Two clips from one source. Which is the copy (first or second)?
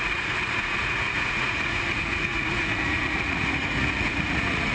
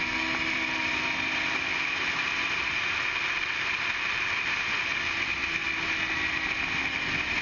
first